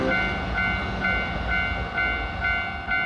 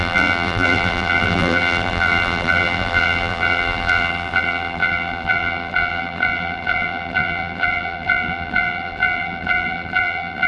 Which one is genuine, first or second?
first